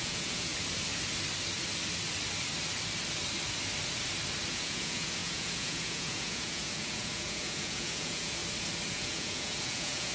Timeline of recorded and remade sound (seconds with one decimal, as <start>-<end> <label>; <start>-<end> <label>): 0.0-0.5 remade; 0.5-4.5 recorded; 4.5-8.4 remade; 8.4-8.9 recorded; 8.9-10.1 remade